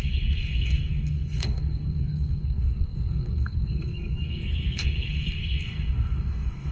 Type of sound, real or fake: fake